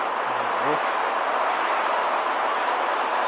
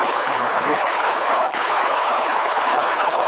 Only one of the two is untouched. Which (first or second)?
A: first